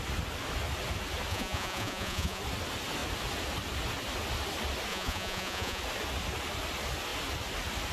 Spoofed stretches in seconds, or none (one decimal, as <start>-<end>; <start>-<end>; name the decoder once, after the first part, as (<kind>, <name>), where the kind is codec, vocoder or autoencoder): 1.3-2.4 (vocoder, Vocos); 4.9-5.8